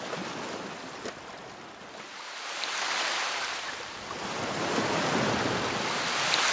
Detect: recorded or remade recorded